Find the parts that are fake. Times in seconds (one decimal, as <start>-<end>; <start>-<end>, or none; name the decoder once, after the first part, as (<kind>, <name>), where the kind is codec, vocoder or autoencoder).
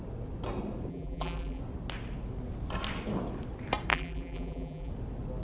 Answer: 0.9-1.6 (vocoder, BigVGAN v2); 3.9-4.9